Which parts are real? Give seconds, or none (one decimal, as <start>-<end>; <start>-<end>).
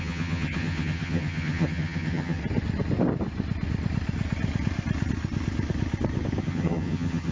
2.4-6.4